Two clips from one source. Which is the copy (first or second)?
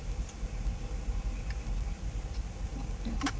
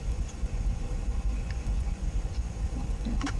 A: second